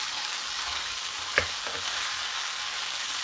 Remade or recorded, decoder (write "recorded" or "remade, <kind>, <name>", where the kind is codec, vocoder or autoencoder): remade, codec, DAC